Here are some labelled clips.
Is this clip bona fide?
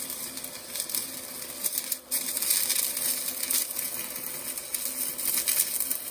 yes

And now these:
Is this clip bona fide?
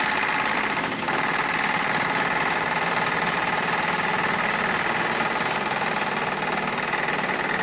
yes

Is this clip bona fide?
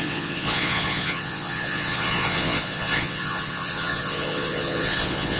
no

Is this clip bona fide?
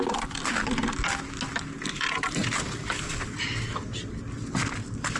yes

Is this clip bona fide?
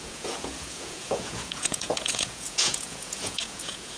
no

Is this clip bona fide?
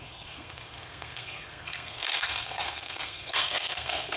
no